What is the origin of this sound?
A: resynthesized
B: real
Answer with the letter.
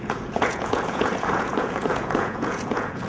A